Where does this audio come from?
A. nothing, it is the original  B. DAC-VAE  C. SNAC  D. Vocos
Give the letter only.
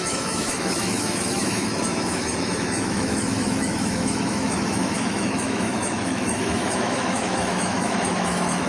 B